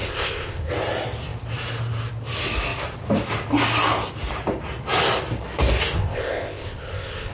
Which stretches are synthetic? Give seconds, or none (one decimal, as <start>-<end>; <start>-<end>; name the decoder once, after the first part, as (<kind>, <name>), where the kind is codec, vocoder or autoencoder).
0.0-0.7 (codec, ZipCodec); 6.0-7.3

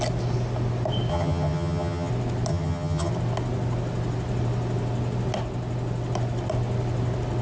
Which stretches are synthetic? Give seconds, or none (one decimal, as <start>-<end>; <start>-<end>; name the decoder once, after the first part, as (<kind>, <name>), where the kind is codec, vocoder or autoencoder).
1.1-2.1 (vocoder, HiFi-GAN); 2.5-3.1

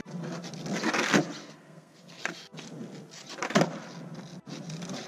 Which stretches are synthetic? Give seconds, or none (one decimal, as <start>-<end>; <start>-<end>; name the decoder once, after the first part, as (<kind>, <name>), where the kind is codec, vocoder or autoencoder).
1.4-2.2 (codec, SNAC)